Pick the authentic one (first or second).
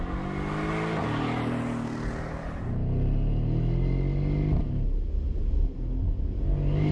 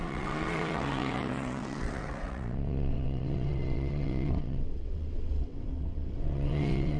first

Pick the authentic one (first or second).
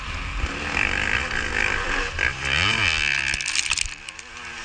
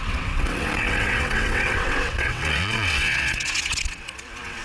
first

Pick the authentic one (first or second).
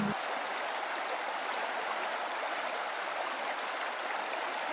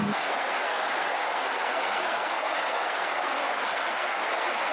first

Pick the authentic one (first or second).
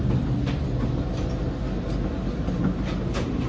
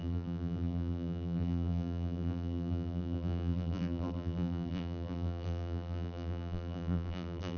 first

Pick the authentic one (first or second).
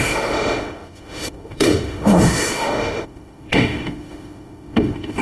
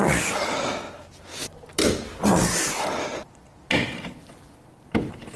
second